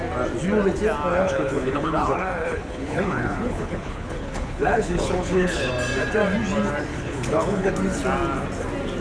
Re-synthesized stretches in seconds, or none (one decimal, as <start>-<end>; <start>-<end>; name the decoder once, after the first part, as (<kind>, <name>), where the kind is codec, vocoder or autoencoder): 1.1-5.7 (codec, HILCodec); 6.9-7.7